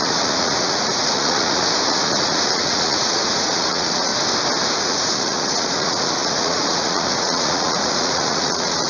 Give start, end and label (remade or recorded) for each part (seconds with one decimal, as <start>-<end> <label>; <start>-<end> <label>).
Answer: 0.0-4.1 remade; 4.1-4.7 recorded; 4.7-8.9 remade